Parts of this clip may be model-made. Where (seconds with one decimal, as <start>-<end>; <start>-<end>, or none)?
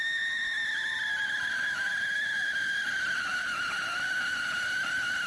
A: none